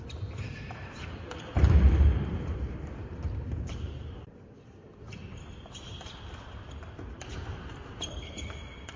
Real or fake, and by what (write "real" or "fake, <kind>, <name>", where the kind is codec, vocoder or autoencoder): fake, vocoder, BigVGAN v2